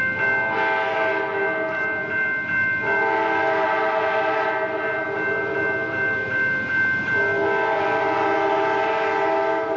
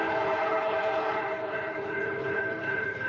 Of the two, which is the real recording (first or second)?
first